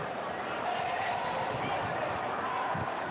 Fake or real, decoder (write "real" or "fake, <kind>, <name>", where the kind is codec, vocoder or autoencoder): real